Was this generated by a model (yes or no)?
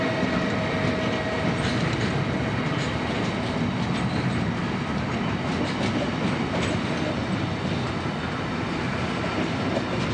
no